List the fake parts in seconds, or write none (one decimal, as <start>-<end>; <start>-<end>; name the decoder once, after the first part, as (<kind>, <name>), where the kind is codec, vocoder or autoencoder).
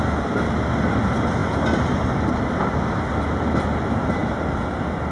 1.4-2.3 (vocoder, BigVGAN v2); 4.2-5.1